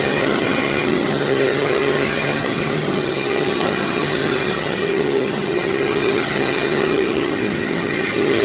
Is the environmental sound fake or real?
fake